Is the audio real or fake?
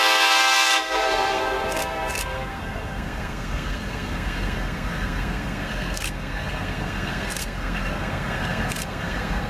fake